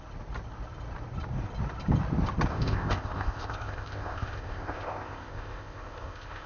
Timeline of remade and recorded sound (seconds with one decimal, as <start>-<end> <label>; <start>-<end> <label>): 0.0-2.5 recorded; 2.5-6.5 remade